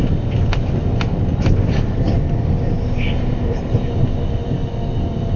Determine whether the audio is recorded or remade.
recorded